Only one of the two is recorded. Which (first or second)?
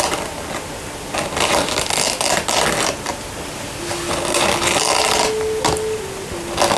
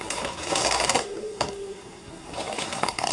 first